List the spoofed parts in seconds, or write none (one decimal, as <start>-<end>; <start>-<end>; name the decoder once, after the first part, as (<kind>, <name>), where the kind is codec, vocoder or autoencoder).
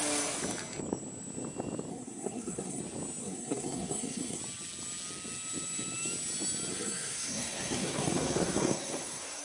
1.9-2.8 (codec, SNAC); 3.2-4.4; 6.7-9.4